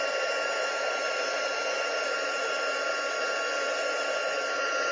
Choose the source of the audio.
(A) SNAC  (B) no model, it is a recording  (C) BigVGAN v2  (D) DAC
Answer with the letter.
B